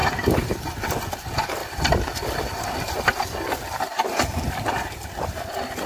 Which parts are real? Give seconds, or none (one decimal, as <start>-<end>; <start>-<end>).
0.9-5.9